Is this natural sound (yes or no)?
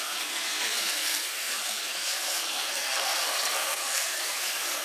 no